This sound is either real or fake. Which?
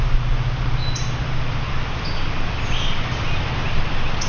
real